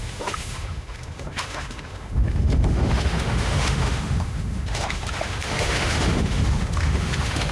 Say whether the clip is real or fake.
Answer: fake